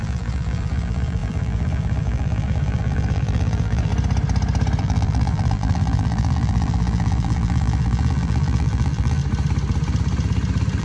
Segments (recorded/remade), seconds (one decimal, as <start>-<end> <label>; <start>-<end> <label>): 0.0-3.9 remade; 3.9-4.8 recorded; 4.8-9.2 remade; 9.2-10.8 recorded